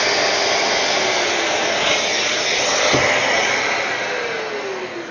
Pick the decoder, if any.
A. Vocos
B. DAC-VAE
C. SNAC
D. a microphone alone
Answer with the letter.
D